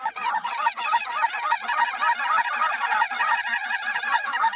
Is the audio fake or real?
fake